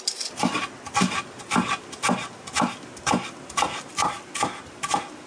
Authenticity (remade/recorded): recorded